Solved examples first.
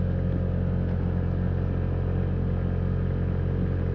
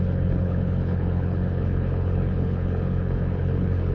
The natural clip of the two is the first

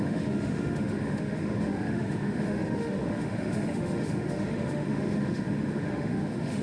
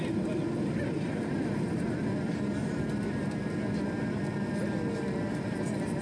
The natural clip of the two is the second